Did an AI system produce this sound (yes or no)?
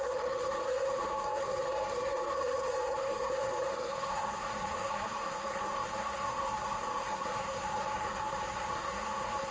yes